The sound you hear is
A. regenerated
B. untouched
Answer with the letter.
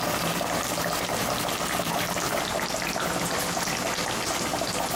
B